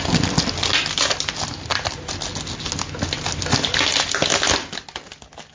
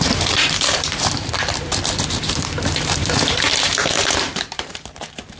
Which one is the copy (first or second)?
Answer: second